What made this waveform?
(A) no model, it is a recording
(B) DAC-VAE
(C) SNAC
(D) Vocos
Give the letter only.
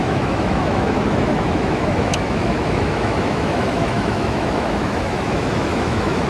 B